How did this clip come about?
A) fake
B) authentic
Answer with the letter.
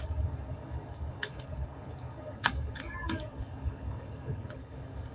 A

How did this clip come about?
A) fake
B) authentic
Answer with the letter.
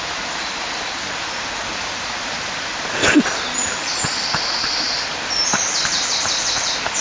B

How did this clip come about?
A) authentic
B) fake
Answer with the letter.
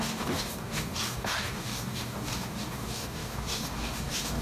B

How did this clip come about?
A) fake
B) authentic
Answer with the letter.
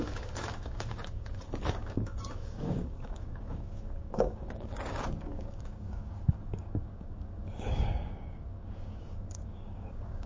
A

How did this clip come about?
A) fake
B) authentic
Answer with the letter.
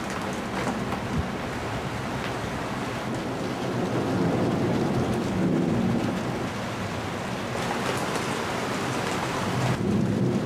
B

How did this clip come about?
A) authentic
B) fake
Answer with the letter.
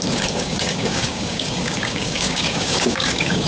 B